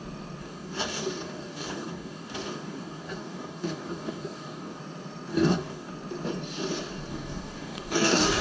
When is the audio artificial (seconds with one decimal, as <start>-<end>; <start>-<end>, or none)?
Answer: 0.4-4.8; 5.3-5.9; 7.1-8.4